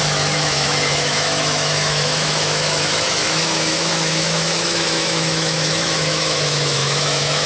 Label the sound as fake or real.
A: fake